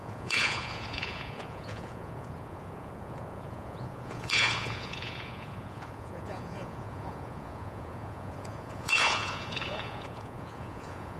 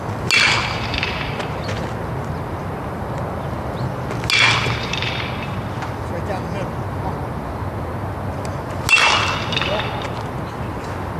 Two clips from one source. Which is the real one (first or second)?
second